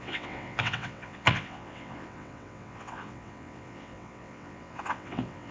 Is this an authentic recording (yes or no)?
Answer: no